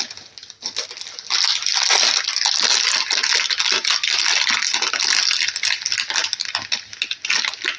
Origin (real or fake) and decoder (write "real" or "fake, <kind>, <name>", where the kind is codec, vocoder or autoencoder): real